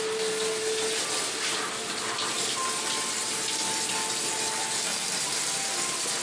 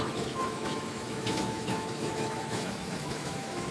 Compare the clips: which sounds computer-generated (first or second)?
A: second